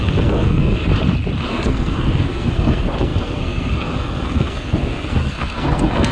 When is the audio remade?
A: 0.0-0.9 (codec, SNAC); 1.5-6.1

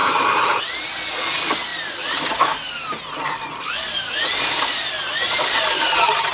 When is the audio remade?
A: none

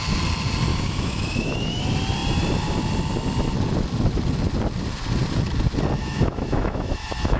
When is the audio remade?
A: 0.7-1.8 (autoencoder, DAC-VAE); 6.0-7.4

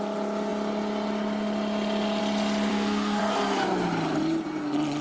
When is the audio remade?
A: 2.7-3.2 (codec, SNAC)